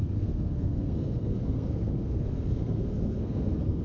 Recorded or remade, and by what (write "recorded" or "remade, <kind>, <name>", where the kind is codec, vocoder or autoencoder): remade, codec, SNAC